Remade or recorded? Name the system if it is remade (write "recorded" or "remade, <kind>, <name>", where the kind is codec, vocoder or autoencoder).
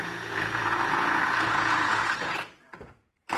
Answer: remade, vocoder, Vocos